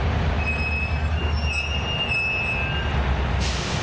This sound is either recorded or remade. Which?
recorded